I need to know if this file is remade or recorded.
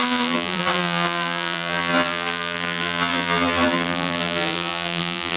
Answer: remade